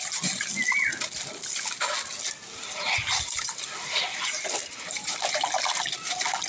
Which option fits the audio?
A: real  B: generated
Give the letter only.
A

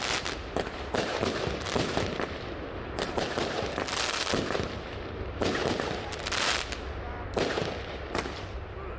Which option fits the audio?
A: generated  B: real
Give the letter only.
B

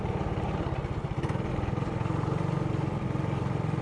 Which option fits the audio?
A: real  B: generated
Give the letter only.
A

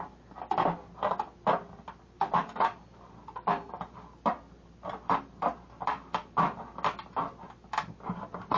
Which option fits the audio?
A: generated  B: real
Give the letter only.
B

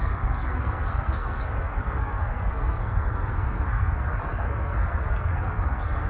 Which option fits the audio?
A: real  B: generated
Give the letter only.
B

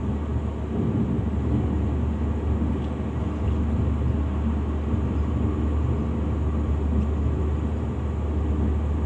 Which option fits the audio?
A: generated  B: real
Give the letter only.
B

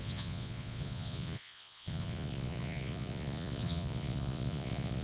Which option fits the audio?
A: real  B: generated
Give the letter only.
B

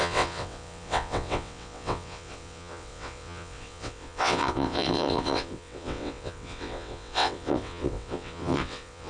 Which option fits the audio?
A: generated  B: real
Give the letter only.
A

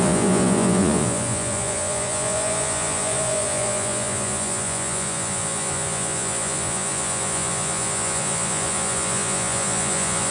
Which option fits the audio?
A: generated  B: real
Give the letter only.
A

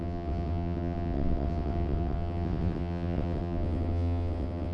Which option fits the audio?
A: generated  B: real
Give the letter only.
A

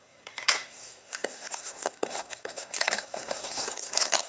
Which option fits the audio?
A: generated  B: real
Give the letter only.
A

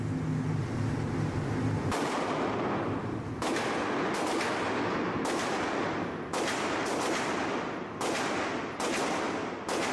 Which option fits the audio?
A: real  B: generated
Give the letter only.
A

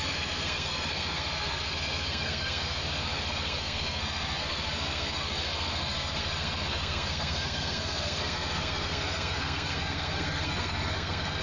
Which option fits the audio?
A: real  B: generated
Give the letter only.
B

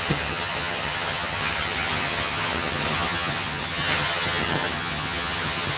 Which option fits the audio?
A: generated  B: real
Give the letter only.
A